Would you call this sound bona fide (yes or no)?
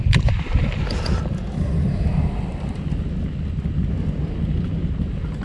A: yes